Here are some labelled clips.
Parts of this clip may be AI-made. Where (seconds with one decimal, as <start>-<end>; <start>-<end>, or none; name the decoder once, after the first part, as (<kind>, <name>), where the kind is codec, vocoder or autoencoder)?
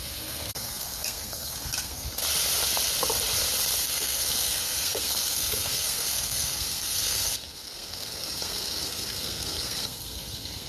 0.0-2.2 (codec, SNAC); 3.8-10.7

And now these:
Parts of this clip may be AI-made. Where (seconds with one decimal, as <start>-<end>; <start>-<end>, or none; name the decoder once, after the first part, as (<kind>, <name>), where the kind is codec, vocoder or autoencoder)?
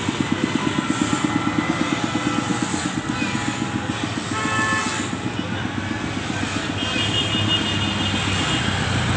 none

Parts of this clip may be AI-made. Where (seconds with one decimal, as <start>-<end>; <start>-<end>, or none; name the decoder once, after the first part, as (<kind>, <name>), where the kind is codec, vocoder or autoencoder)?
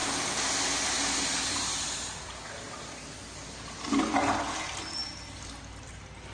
none